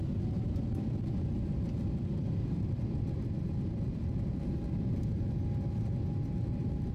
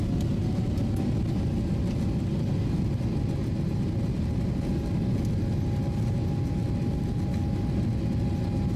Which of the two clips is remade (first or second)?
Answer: first